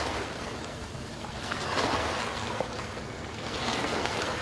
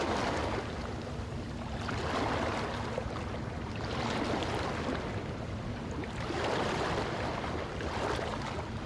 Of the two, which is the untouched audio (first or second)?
second